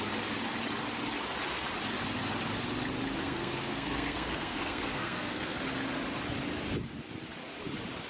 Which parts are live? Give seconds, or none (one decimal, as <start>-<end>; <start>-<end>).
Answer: 0.0-3.2; 5.6-8.1